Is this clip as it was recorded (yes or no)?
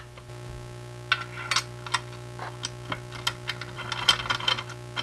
yes